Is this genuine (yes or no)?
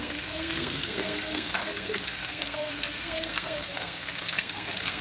no